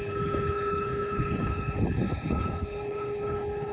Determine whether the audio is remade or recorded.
remade